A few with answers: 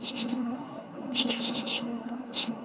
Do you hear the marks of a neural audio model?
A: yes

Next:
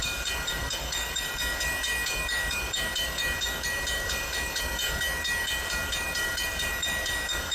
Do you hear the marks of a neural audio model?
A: yes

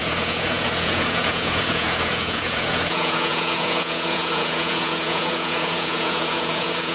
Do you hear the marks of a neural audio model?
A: yes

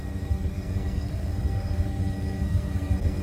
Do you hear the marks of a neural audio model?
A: yes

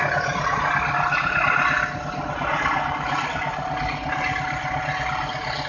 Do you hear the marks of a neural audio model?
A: no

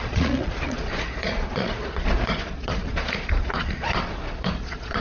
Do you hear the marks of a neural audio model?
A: yes